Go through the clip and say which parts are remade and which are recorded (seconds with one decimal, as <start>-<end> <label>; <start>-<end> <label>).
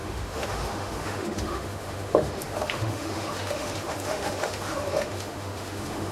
0.0-6.1 remade